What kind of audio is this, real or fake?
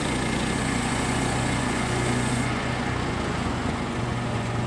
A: fake